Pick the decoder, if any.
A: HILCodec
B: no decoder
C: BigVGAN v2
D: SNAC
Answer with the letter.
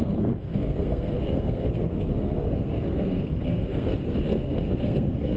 D